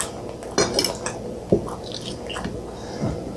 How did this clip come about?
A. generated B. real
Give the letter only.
B